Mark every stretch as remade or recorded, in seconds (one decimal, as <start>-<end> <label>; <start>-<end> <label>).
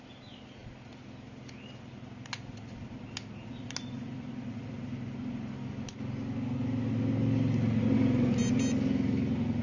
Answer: 0.0-9.6 recorded